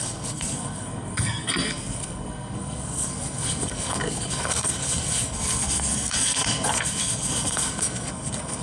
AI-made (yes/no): yes